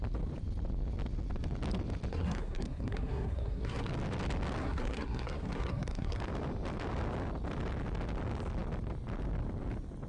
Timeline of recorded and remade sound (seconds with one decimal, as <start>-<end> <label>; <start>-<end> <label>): 0.0-2.1 recorded; 2.1-3.9 remade; 3.9-4.6 recorded; 4.6-6.2 remade; 6.2-10.1 recorded